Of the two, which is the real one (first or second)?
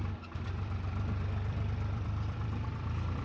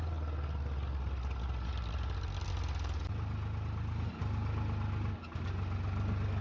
second